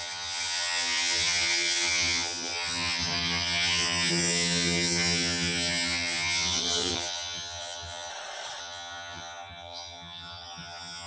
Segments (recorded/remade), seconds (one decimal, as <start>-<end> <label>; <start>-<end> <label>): 0.0-8.1 remade; 8.1-8.6 recorded; 8.6-11.1 remade